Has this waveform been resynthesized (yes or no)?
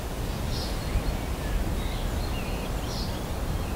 no